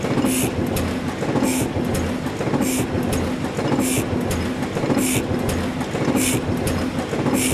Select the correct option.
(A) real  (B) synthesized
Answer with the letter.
A